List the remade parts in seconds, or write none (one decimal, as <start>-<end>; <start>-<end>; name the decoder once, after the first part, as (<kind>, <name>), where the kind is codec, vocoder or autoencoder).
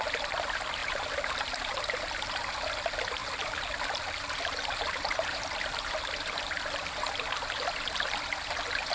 0.8-1.7 (vocoder, BigVGAN v2); 3.2-5.9